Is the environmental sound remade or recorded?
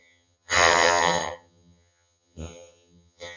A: remade